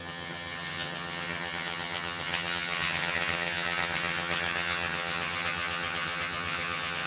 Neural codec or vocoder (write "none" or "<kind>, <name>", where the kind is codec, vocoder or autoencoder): vocoder, HiFi-GAN